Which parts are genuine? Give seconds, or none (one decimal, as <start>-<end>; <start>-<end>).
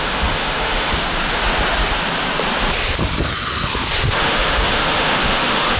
0.9-4.1